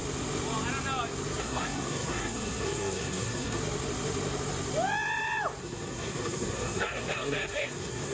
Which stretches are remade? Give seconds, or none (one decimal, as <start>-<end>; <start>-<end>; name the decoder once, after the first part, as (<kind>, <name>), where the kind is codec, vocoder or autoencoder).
1.4-3.6 (codec, SNAC); 5.6-8.1